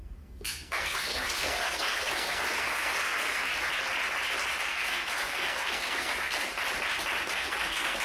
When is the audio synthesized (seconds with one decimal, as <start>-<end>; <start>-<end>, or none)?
0.0-3.5; 4.6-6.5; 7.3-8.0